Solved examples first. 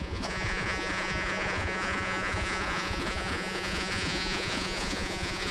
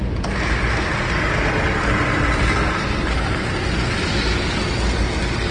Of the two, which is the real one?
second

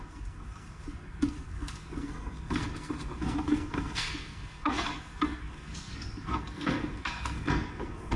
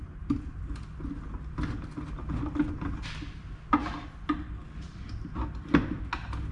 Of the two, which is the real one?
second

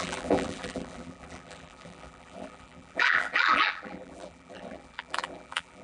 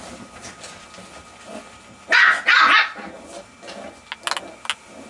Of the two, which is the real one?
second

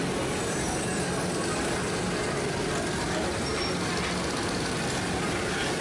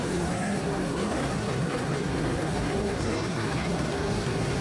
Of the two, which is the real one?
first